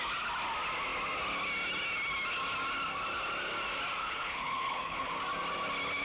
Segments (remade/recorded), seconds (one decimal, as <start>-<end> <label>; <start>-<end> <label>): 0.0-4.0 recorded; 4.0-5.1 remade; 5.1-6.0 recorded